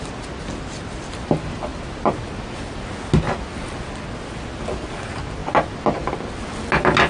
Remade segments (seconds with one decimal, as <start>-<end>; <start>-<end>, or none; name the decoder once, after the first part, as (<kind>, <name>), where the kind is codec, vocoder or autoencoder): none